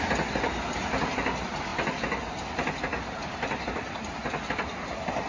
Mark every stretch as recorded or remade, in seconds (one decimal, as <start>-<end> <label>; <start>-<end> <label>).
0.0-5.3 recorded